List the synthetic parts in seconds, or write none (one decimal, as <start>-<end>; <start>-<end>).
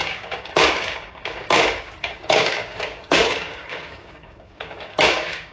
0.0-5.5